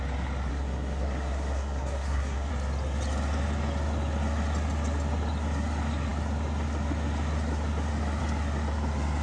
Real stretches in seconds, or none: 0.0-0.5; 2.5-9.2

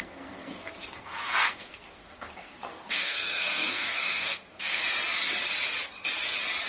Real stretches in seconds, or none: 4.8-6.7

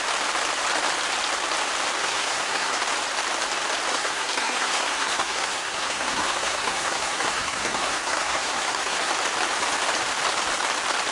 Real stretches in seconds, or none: 0.0-2.0; 2.8-3.9; 9.1-11.1

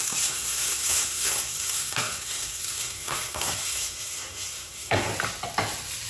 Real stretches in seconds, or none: 5.1-6.1

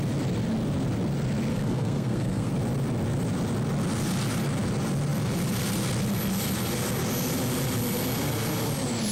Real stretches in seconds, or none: 0.0-1.5; 2.5-9.1